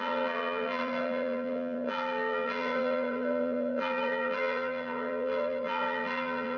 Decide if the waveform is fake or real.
fake